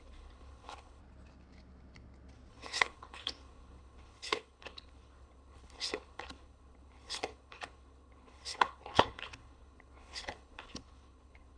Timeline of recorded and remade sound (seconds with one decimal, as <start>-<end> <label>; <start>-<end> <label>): 0.0-1.0 remade; 1.0-2.5 recorded; 2.5-11.6 remade